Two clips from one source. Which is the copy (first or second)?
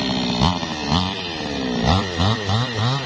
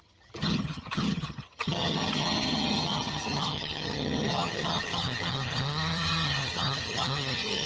second